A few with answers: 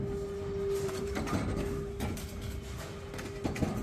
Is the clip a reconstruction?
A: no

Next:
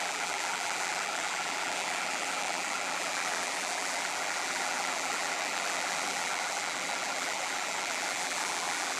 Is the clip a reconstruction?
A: yes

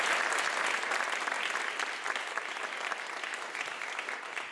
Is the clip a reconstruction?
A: no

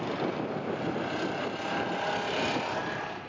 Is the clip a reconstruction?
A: no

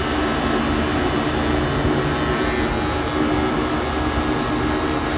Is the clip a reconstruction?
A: no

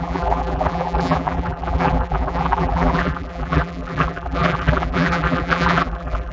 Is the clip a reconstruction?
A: yes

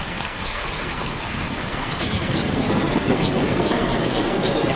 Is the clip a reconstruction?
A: yes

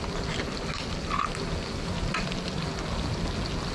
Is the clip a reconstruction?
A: no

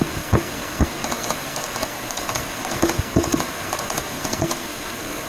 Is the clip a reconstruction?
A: yes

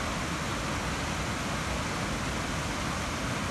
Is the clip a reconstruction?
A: no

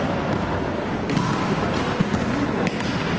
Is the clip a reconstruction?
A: no